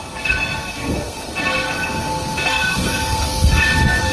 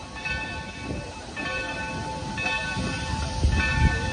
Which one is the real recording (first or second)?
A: second